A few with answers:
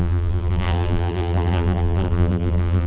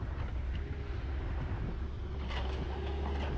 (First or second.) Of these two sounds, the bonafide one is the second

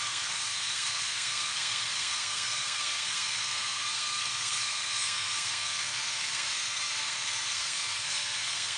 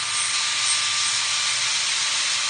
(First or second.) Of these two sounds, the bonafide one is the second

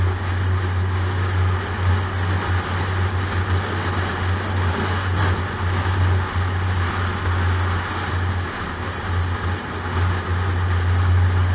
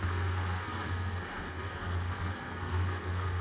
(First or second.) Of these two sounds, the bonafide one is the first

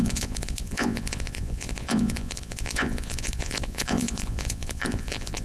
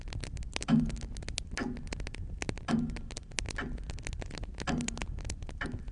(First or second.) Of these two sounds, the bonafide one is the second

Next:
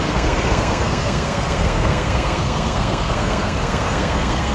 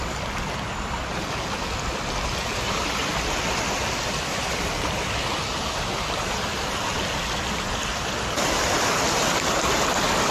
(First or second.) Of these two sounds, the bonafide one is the second